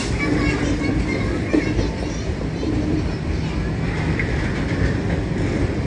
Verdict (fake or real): real